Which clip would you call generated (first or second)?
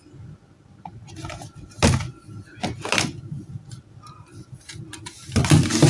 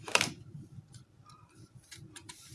second